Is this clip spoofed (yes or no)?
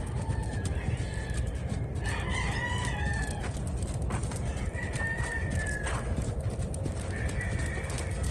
no